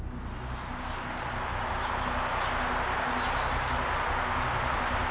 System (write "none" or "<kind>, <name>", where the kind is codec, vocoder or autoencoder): none